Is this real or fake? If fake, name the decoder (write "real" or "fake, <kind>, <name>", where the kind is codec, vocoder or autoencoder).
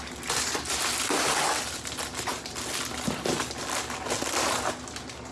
real